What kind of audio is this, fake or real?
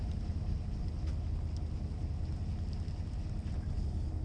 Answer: real